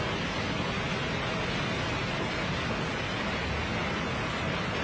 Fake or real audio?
real